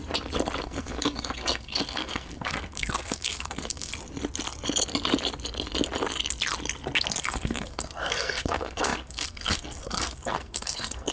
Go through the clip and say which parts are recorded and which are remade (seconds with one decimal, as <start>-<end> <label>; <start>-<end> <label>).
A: 0.0-0.6 recorded; 0.6-3.9 remade; 3.9-7.2 recorded; 7.2-11.1 remade